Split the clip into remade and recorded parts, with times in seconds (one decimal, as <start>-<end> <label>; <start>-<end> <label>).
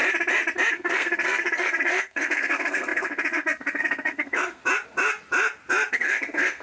0.0-0.7 recorded; 0.7-4.6 remade; 4.6-5.9 recorded; 5.9-6.6 remade